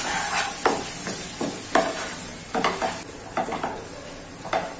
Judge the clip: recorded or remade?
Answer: recorded